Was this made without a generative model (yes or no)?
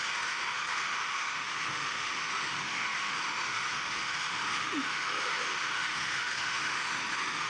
no